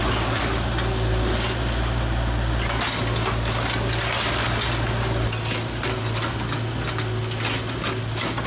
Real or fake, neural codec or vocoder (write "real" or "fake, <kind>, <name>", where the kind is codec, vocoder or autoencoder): real